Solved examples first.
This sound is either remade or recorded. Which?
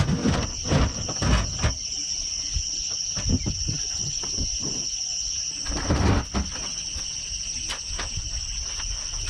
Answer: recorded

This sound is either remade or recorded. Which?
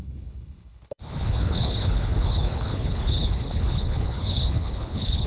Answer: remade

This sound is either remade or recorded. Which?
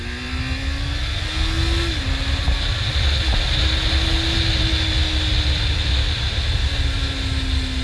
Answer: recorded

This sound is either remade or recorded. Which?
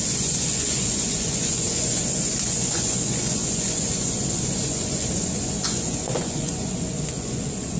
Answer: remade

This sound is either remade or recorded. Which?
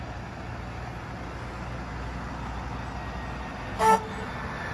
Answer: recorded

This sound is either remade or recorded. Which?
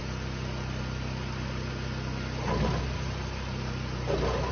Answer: recorded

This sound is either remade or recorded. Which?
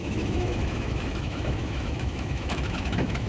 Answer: remade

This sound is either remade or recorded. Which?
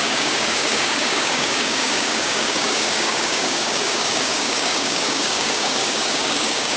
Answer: remade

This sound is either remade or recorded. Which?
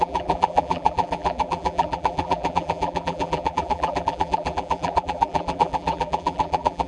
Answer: remade